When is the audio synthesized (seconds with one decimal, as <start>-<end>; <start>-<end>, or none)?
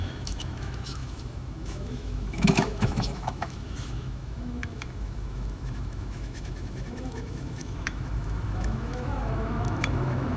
0.0-10.4